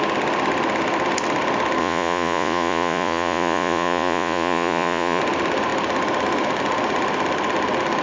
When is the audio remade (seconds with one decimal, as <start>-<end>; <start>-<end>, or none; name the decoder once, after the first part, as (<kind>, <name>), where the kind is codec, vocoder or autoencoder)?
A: 1.8-5.2 (vocoder, Vocos)